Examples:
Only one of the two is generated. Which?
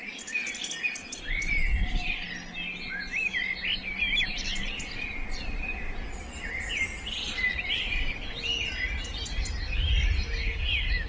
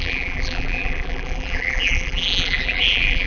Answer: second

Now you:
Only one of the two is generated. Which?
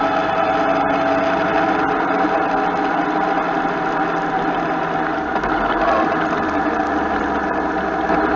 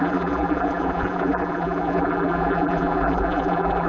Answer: second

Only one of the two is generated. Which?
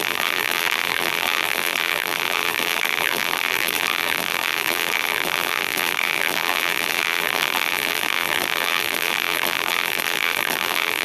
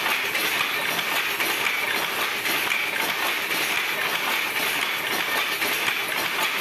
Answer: first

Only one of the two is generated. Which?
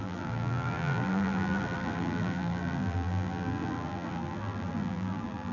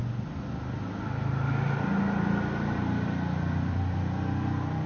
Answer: first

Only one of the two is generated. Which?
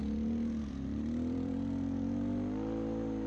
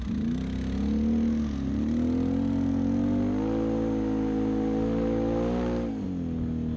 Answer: first